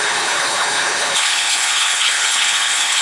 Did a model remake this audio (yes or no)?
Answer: yes